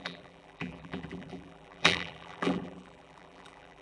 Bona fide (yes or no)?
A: no